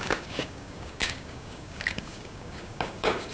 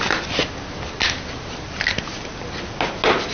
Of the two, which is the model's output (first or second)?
first